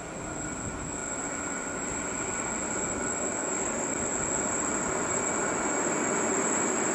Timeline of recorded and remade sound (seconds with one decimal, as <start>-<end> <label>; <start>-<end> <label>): 0.0-3.4 recorded; 3.4-3.9 remade; 3.9-6.9 recorded